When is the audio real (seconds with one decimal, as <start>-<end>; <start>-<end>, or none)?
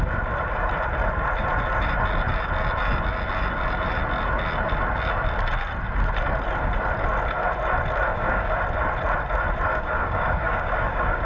0.0-8.1; 8.6-9.7